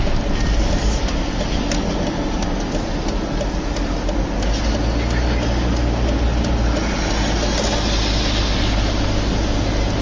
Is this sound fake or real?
real